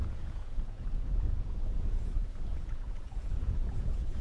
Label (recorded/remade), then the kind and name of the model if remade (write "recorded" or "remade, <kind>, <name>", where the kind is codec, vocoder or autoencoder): remade, vocoder, Vocos